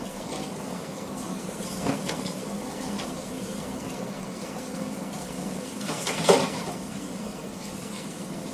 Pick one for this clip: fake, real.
fake